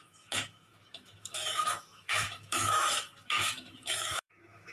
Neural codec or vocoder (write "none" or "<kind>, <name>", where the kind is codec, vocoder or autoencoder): autoencoder, DAC-VAE